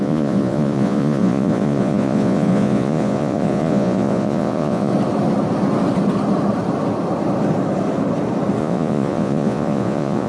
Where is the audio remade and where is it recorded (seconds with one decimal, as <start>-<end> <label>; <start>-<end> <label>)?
0.0-4.9 remade; 4.9-8.6 recorded; 8.6-10.3 remade